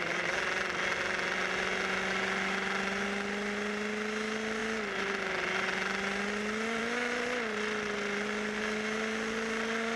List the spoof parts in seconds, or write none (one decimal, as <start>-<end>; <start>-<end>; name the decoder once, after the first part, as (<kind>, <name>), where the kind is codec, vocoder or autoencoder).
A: none